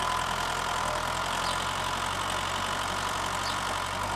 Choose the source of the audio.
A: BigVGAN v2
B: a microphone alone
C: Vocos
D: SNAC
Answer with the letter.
A